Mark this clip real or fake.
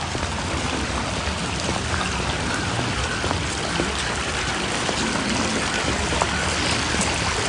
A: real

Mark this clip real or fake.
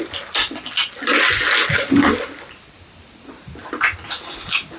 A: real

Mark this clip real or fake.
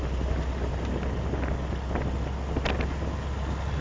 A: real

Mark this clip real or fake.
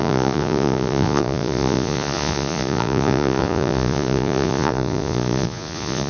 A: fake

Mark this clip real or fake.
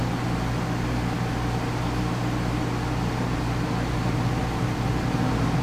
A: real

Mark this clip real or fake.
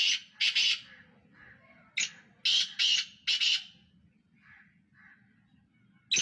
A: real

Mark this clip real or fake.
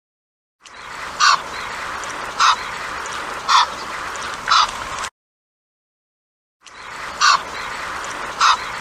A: real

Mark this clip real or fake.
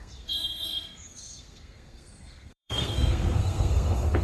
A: fake